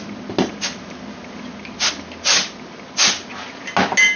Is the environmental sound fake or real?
real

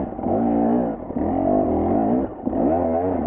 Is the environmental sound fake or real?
real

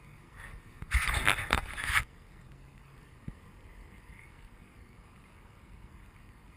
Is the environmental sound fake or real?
fake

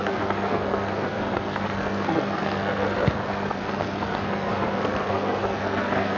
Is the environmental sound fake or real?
fake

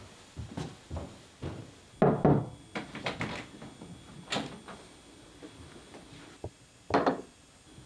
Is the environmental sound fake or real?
real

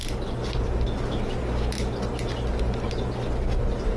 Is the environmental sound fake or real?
real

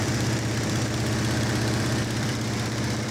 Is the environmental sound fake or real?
fake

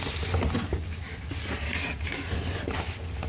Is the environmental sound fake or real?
real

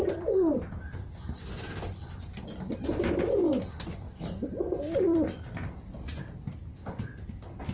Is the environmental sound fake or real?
real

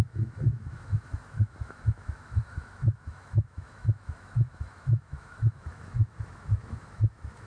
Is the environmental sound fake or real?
fake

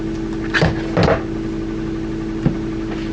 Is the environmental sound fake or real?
real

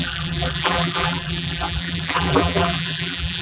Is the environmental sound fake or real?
fake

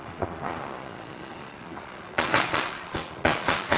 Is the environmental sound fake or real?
fake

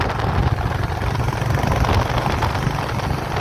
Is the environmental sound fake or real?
real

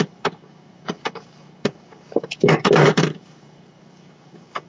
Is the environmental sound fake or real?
fake